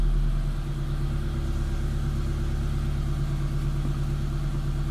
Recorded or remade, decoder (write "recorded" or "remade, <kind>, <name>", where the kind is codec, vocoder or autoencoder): recorded